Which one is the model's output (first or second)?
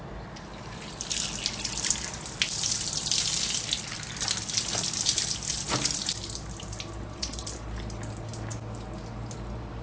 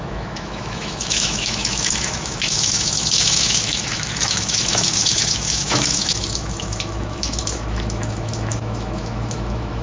second